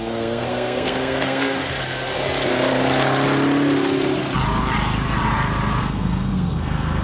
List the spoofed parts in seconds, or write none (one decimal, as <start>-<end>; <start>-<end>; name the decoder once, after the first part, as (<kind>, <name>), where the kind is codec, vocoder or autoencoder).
0.0-1.6 (codec, SNAC); 5.8-7.0